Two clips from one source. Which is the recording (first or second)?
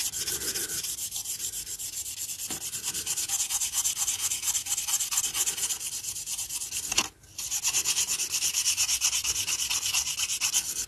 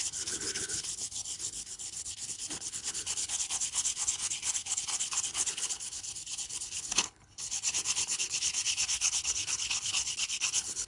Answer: first